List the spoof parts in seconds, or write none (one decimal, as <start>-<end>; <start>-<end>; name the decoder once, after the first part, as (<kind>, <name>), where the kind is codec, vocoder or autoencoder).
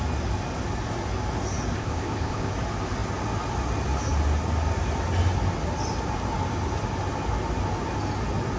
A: 1.8-2.5 (codec, ZipCodec)